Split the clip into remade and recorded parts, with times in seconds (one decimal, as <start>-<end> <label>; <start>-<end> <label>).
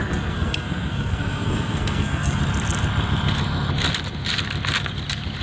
0.0-2.4 remade; 2.4-5.4 recorded